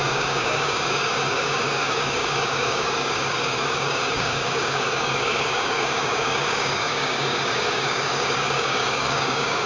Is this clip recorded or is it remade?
remade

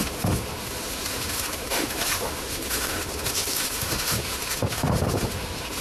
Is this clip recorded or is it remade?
remade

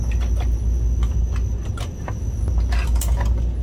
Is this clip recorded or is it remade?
recorded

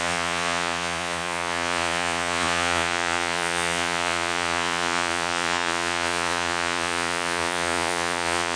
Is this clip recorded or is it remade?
remade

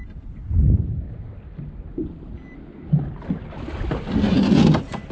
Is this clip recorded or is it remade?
recorded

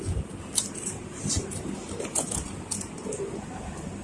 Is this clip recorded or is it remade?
recorded